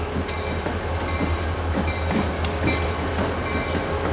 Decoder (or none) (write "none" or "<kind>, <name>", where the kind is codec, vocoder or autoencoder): none